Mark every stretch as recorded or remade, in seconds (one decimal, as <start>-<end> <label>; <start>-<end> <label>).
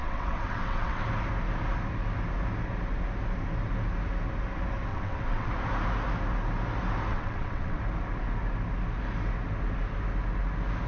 0.0-1.0 remade; 1.0-4.9 recorded; 4.9-5.5 remade; 5.5-7.1 recorded; 7.1-7.8 remade; 7.8-10.9 recorded